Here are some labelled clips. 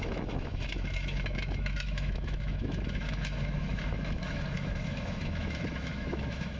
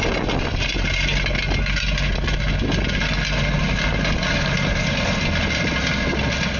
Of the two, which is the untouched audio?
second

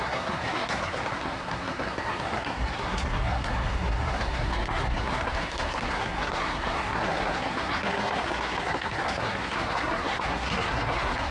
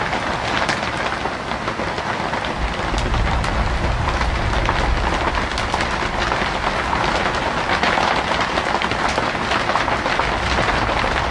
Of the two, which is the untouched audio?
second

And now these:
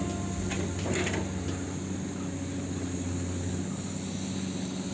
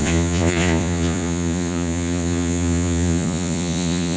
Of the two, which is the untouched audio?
first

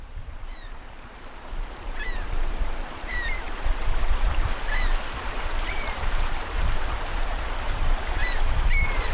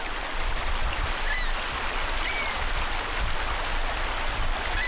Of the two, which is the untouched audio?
second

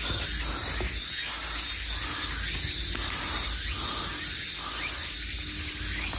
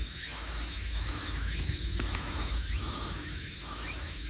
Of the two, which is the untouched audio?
first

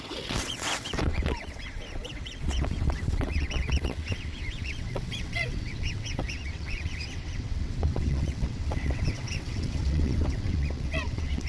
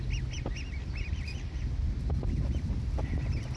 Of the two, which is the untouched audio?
second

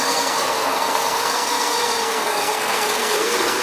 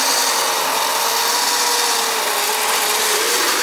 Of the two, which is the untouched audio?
second